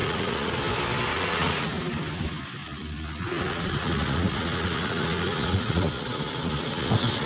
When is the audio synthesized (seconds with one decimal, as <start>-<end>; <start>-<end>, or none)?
0.0-0.6; 1.1-1.7; 2.6-7.3